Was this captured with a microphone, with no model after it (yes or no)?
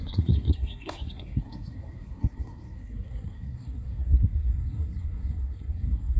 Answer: no